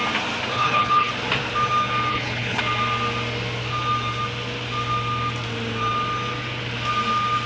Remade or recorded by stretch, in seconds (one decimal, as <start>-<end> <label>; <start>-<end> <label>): 0.0-0.5 recorded; 0.5-1.1 remade; 1.1-2.1 recorded; 2.1-2.6 remade; 2.6-7.5 recorded